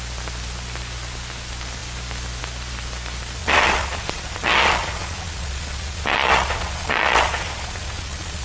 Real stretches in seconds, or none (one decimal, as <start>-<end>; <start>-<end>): 0.0-3.4